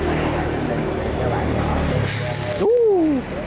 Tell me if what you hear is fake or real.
real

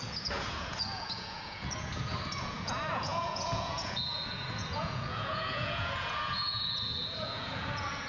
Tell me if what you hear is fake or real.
fake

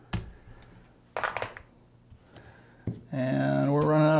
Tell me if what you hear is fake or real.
real